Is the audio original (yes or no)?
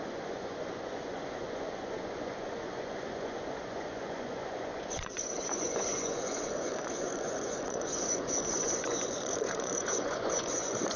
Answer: no